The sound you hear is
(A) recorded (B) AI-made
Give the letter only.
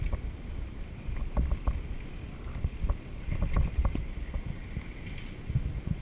A